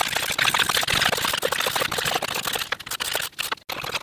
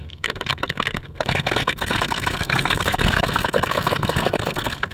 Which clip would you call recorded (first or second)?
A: first